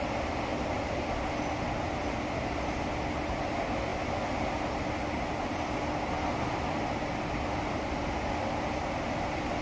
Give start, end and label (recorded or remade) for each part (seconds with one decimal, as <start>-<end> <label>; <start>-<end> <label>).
0.0-9.6 recorded